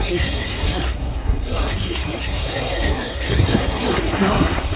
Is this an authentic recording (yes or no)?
no